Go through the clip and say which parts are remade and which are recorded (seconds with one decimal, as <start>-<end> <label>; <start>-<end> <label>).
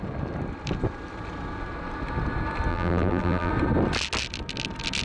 0.0-2.7 recorded; 2.7-3.5 remade; 3.5-5.0 recorded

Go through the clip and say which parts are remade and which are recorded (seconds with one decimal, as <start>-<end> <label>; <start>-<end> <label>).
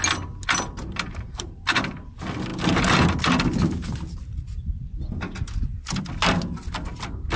0.0-0.8 recorded; 0.8-2.1 remade; 2.1-7.4 recorded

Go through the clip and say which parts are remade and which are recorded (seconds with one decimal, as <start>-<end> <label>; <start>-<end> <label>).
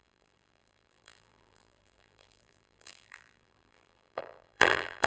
0.0-5.1 remade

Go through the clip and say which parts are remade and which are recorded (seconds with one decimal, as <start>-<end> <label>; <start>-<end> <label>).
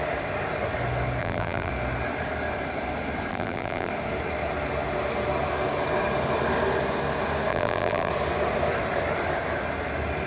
0.0-1.2 recorded; 1.2-1.7 remade; 1.7-3.3 recorded; 3.3-3.9 remade; 3.9-7.5 recorded; 7.5-8.1 remade; 8.1-10.3 recorded